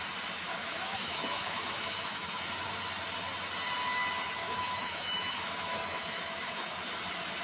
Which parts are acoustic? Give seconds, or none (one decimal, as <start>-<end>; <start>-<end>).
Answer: 0.0-0.5; 2.4-4.4; 6.7-7.4